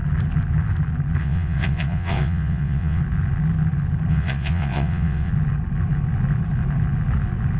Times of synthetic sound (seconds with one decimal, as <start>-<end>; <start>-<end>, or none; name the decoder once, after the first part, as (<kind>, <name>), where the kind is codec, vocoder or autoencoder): 1.2-3.0 (vocoder, WaveNeXt); 4.1-5.3